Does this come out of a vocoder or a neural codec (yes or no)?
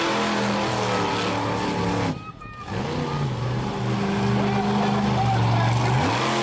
no